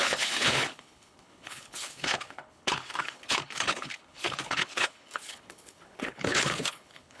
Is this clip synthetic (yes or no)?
yes